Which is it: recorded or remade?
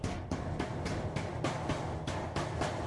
recorded